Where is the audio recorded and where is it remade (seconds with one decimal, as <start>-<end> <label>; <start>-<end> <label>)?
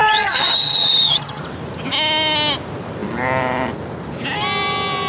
0.0-1.4 remade; 1.4-5.1 recorded